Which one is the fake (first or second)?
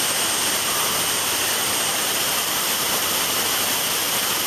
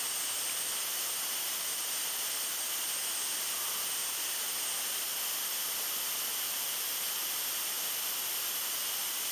first